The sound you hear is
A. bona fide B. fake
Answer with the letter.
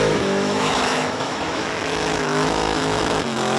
B